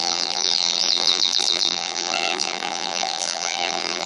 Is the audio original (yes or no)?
no